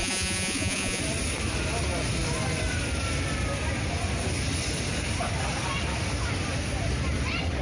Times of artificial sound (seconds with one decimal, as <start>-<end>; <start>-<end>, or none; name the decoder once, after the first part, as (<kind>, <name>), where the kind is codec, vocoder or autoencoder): 0.0-1.0 (vocoder, Vocos)